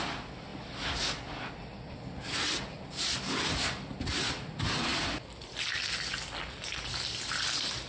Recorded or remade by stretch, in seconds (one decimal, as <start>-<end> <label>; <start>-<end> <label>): 0.0-7.9 recorded